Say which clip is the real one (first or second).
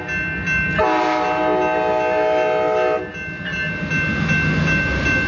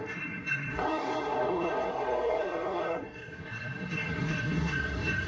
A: first